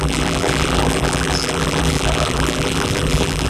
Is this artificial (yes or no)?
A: yes